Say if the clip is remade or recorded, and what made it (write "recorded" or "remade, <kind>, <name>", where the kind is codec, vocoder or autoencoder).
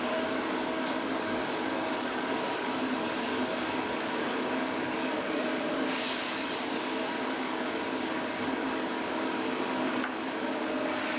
remade, codec, DAC